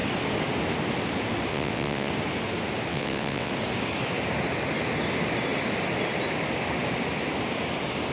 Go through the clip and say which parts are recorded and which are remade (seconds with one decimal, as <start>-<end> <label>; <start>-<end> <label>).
0.0-1.5 recorded; 1.5-2.1 remade; 2.1-2.9 recorded; 2.9-3.5 remade; 3.5-8.1 recorded